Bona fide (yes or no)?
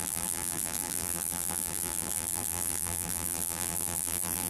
no